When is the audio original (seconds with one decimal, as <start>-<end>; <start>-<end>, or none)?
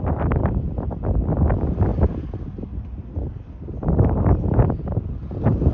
0.0-5.7